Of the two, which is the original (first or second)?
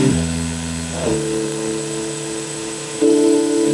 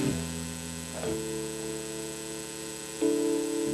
second